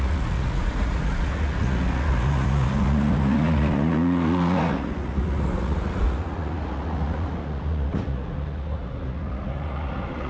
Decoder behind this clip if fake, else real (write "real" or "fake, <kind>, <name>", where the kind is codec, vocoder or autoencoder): fake, vocoder, Vocos